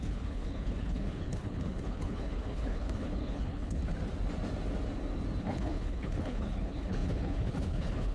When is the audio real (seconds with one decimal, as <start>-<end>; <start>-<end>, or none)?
3.8-5.4